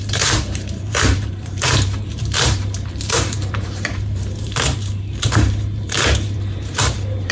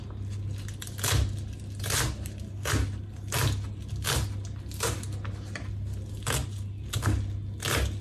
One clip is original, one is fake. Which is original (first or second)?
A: second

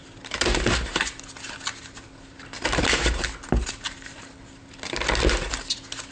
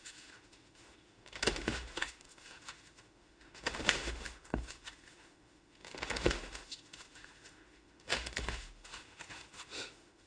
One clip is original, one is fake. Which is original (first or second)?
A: first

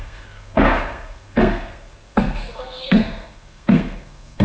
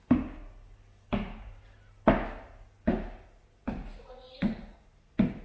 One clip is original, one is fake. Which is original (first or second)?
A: second